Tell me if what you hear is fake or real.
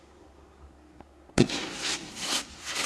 fake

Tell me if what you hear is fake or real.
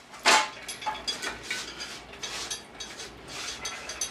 real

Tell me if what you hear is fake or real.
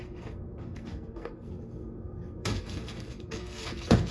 fake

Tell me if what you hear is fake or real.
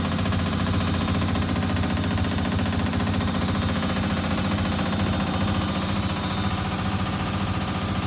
real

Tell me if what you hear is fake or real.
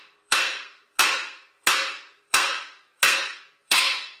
fake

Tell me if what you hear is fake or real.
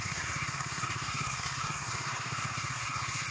fake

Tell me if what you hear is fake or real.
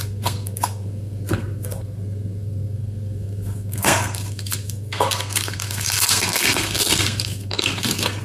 fake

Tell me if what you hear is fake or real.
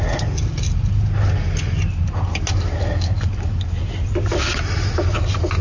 real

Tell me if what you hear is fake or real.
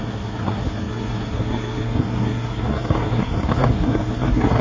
fake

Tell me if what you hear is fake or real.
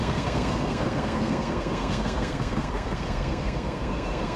fake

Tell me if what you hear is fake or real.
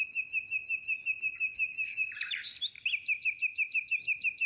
real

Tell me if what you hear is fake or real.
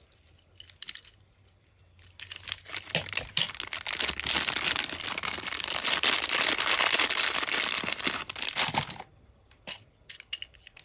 real